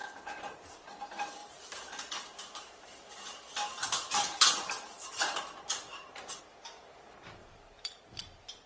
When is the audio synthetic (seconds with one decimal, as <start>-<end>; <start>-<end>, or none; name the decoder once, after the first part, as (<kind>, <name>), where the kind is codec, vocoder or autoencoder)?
1.4-6.4 (vocoder, BigVGAN v2); 7.4-8.2